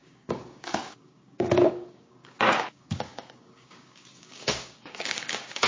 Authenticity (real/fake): fake